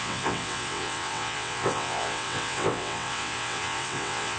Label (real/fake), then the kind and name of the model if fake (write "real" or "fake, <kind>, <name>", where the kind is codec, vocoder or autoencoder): fake, vocoder, WaveNeXt